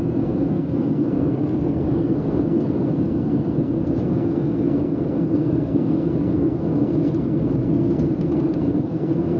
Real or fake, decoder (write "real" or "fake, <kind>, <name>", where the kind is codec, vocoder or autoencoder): fake, codec, SNAC